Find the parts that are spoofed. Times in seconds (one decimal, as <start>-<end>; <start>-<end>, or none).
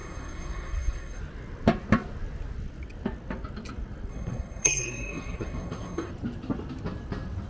0.0-1.2; 4.1-6.1